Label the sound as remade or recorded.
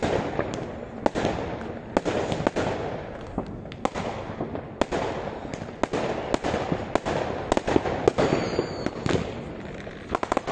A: recorded